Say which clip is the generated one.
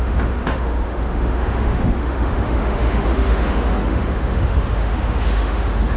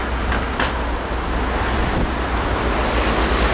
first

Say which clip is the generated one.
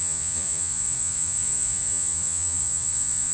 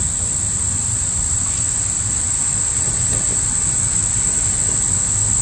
first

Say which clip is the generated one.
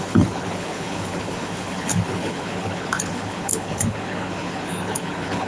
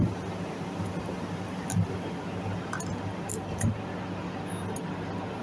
first